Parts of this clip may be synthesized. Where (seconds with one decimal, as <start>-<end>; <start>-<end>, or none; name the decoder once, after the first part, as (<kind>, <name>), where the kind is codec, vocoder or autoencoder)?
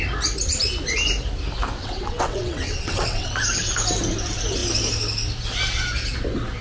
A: 1.8-3.3 (vocoder, WaveNeXt)